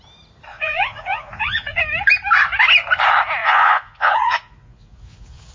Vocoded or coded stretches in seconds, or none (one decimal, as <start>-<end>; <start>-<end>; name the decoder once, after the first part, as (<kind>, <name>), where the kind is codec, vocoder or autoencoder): 0.5-1.8 (vocoder, Vocos); 3.4-5.5